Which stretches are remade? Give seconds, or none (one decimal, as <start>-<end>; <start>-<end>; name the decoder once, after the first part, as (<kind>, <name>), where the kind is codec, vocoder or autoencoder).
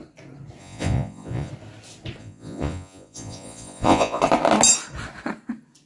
0.6-1.5 (vocoder, Vocos); 2.2-4.2